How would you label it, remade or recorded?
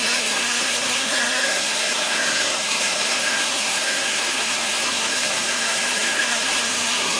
remade